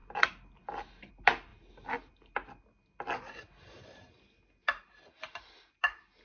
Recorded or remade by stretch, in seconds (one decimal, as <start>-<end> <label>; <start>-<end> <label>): 0.0-6.2 recorded